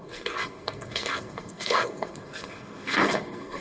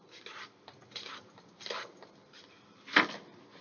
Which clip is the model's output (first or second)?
first